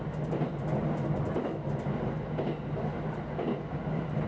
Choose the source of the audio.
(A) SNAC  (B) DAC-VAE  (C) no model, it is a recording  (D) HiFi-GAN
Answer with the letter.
C